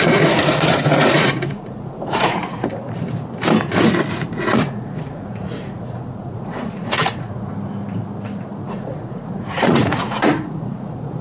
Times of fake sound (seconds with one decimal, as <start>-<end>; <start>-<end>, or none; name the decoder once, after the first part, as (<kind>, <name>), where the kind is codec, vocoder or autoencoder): 0.0-2.7 (vocoder, Vocos); 4.1-7.5; 8.7-11.2